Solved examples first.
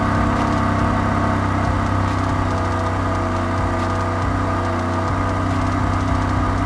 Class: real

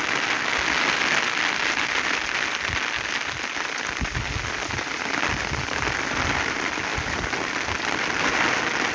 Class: real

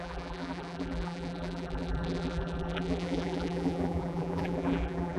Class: fake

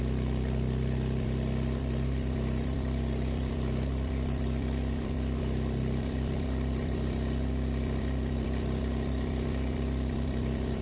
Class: fake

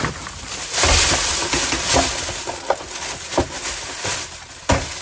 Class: real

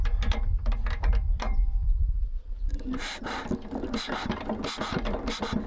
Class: fake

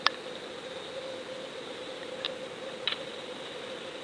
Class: real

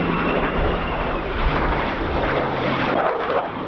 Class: fake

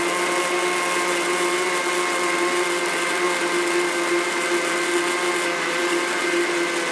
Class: real